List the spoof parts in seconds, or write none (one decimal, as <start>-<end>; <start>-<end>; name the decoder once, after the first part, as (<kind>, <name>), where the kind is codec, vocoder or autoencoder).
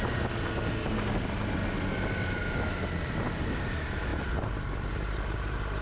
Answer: none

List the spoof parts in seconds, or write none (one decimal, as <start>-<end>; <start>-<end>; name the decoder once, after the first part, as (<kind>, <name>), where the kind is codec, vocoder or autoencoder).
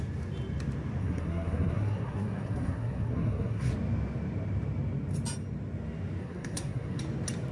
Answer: 1.0-3.7 (codec, SNAC); 6.2-7.0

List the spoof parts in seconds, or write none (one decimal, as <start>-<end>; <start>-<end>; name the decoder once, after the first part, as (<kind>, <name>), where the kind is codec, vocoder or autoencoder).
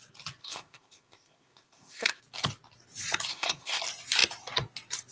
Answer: 0.4-2.2 (codec, ZipCodec); 3.3-3.8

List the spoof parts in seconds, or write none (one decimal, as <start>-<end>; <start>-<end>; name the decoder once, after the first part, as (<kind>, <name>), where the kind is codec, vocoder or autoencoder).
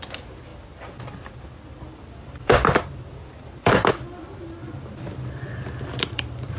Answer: 0.5-3.9 (vocoder, BigVGAN v2); 4.6-6.6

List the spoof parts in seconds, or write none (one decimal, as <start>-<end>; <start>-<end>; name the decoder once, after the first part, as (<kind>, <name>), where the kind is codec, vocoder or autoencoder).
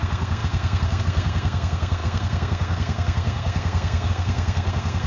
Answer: 0.0-5.1 (codec, SNAC)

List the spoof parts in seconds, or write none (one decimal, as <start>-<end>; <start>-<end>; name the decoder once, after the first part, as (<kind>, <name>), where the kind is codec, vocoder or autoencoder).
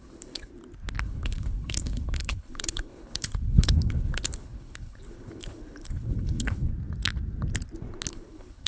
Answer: 0.0-0.5 (codec, HILCodec); 1.0-6.7; 8.1-8.7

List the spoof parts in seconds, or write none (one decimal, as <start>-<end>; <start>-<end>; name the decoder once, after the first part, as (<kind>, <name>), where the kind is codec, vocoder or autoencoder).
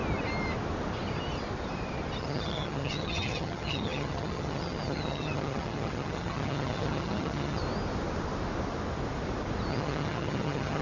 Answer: 2.2-7.6 (vocoder, HiFi-GAN); 9.7-10.8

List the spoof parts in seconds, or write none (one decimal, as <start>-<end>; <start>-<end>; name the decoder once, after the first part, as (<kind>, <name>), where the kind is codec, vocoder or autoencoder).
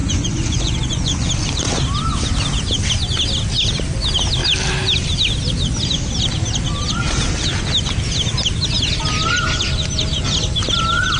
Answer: 0.0-1.3 (vocoder, Vocos)